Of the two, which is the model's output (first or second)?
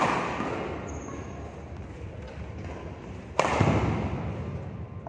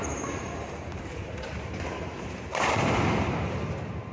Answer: second